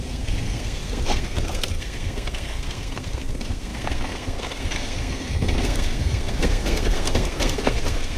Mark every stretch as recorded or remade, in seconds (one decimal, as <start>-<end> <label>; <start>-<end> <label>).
0.0-8.2 remade